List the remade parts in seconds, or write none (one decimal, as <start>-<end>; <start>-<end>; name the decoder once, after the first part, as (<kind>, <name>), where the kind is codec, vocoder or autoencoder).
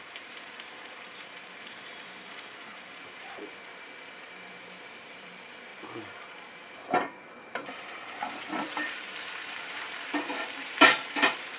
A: 0.0-11.6 (vocoder, BigVGAN v2)